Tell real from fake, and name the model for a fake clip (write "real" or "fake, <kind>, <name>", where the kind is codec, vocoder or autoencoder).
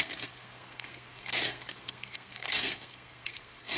fake, codec, SNAC